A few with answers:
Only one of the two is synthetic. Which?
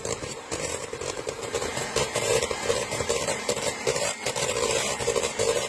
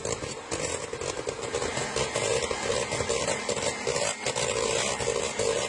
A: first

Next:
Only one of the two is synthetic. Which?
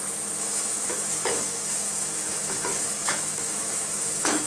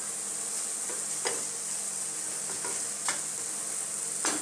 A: first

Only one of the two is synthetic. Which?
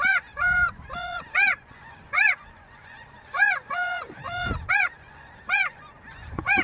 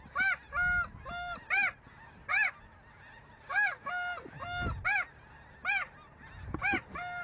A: first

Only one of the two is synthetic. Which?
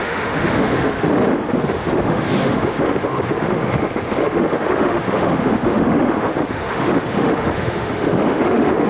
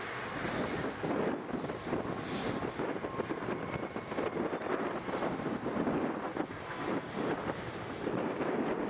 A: first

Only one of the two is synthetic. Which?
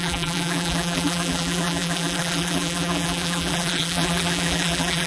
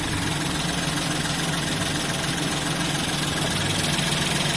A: first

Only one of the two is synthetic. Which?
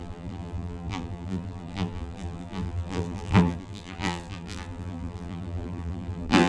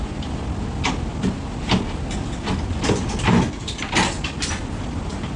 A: first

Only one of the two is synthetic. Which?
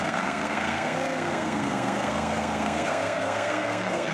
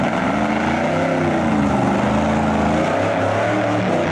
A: first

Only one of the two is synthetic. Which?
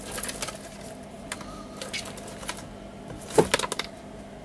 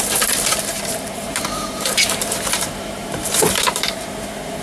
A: second